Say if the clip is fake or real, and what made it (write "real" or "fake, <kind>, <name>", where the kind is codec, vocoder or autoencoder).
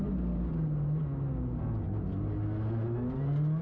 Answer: real